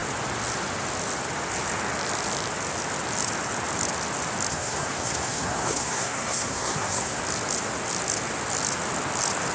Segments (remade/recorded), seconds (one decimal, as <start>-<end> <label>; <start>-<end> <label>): 0.0-4.5 recorded; 4.5-7.2 remade; 7.2-9.5 recorded